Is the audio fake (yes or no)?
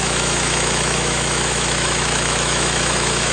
yes